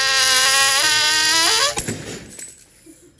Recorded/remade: recorded